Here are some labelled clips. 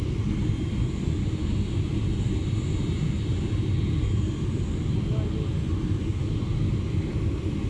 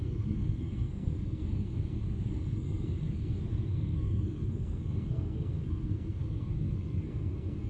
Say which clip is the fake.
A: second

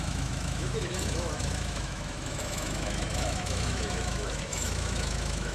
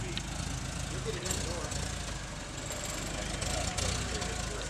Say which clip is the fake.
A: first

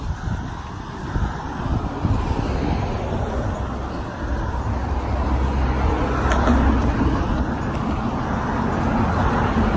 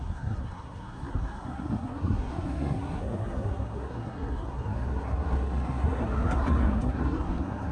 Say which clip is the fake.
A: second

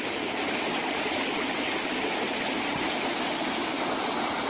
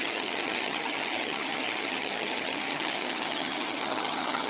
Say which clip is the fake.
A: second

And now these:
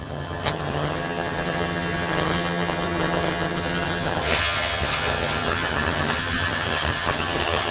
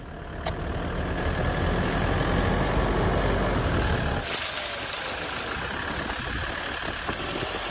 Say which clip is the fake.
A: first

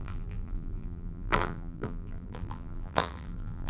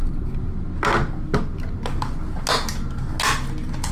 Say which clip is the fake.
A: first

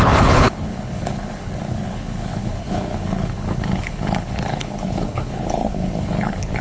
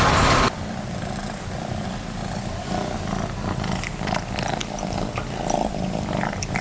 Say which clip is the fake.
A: first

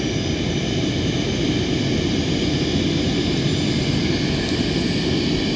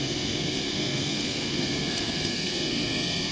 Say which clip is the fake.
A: second